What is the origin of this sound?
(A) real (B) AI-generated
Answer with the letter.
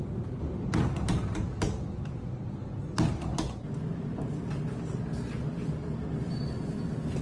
A